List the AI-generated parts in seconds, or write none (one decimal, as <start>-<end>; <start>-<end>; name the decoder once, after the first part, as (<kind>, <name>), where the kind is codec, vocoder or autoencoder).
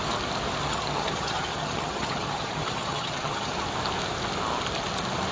0.6-3.6 (vocoder, HiFi-GAN)